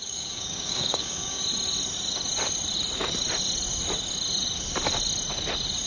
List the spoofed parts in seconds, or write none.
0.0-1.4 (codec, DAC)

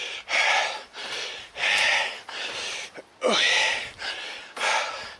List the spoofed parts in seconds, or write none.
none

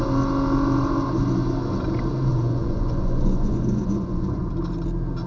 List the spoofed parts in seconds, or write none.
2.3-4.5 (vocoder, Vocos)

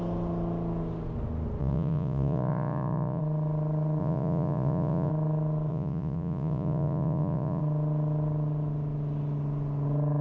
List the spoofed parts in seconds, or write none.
1.6-3.2 (vocoder, Vocos); 4.0-5.1; 5.7-7.6

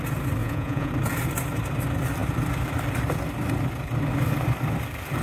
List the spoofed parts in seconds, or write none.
0.4-0.9 (vocoder, Vocos)